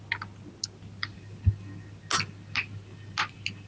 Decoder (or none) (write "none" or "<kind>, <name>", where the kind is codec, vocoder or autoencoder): none